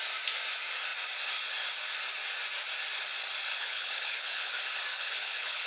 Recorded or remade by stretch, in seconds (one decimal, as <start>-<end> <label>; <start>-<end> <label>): 0.0-3.5 recorded; 3.5-4.5 remade; 4.5-4.9 recorded; 4.9-5.7 remade